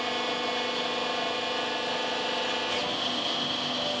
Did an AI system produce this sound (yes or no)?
no